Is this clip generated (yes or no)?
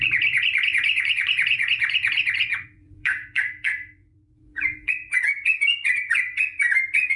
yes